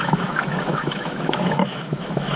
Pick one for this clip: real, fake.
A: fake